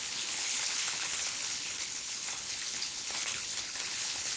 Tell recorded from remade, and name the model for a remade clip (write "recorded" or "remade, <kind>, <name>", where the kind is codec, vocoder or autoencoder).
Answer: remade, codec, HILCodec